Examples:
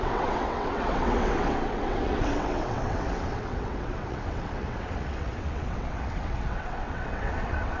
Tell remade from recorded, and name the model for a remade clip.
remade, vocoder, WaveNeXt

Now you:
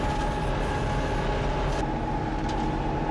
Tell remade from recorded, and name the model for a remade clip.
recorded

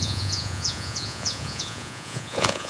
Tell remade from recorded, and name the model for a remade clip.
remade, vocoder, Vocos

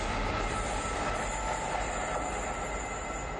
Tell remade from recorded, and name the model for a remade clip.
recorded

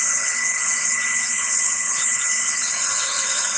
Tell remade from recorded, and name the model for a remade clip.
remade, codec, HILCodec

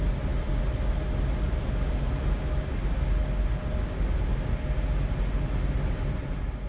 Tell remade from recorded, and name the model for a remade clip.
recorded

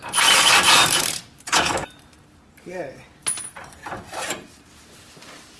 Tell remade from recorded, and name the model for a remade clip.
remade, vocoder, BigVGAN v2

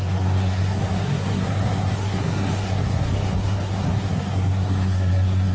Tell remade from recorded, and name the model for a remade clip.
remade, codec, SNAC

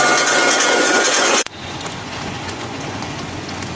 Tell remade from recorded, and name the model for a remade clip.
remade, vocoder, Vocos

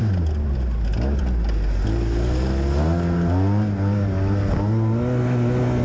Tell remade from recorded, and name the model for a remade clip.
recorded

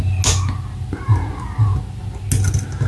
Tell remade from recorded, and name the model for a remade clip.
recorded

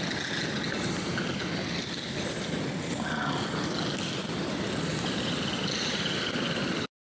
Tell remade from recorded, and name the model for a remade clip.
recorded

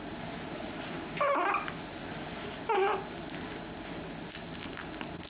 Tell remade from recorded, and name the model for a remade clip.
recorded